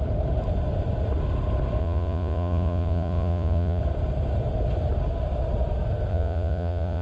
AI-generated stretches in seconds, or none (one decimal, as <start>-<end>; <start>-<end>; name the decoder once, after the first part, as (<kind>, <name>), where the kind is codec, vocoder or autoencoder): 1.8-3.8 (vocoder, Vocos); 6.1-7.0